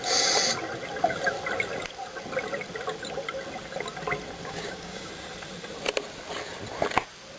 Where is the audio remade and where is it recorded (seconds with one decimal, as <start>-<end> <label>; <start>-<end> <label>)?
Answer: 0.0-4.4 recorded; 4.4-5.1 remade; 5.1-7.4 recorded